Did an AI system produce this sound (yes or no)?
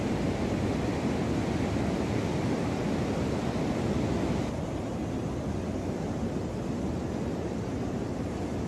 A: no